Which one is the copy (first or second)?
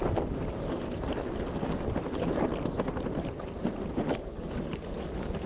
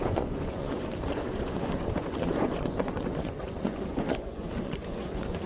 second